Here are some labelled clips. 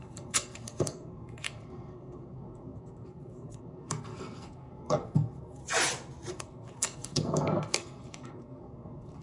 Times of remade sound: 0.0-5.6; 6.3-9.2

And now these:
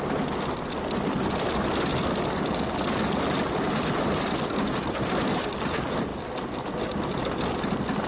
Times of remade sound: none

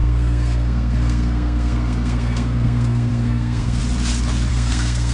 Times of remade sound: 0.0-3.8; 4.5-5.1

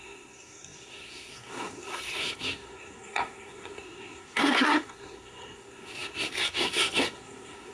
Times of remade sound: 0.0-7.7

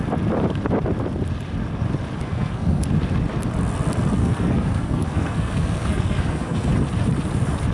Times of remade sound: 2.2-2.9; 4.2-6.7

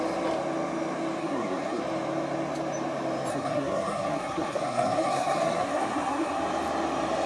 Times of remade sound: 1.2-1.8; 3.3-6.4

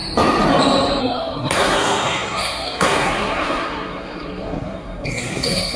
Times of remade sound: 1.0-5.8